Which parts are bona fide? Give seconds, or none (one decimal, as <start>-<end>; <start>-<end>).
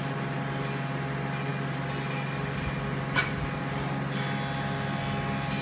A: 0.0-5.6